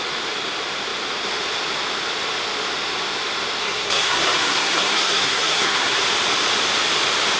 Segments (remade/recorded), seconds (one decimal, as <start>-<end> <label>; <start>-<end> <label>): 0.0-3.6 recorded; 3.6-6.0 remade; 6.0-7.4 recorded